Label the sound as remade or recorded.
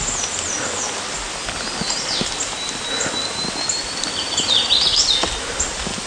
recorded